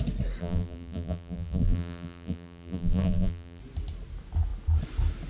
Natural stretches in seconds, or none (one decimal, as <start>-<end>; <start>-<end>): 0.0-0.4; 3.6-5.3